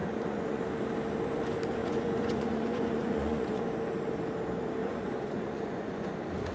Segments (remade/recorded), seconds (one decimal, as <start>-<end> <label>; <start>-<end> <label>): 0.0-0.6 remade; 0.6-1.8 recorded; 1.8-3.6 remade; 3.6-4.8 recorded; 4.8-6.1 remade; 6.1-6.5 recorded